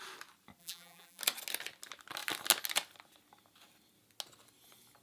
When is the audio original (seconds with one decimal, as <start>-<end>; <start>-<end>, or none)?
0.0-0.6; 1.2-5.0